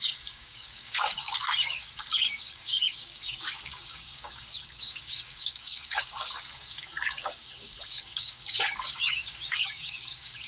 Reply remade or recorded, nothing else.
remade